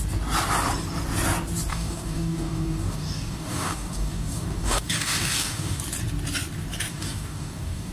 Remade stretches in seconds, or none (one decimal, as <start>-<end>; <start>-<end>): 1.7-5.8; 6.9-7.9

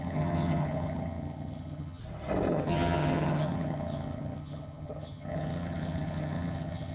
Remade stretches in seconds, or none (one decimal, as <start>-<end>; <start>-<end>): 0.0-2.0; 2.5-6.9

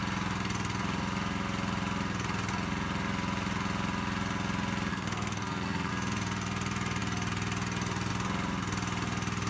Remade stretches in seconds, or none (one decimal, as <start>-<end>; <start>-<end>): 4.9-5.9